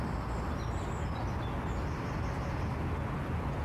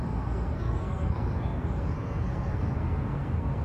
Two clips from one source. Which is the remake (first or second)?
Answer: second